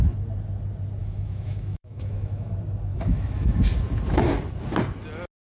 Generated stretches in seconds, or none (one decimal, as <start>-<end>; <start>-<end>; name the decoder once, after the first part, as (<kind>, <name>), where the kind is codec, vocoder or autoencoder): 1.0-2.5 (autoencoder, DAC-VAE); 2.9-3.5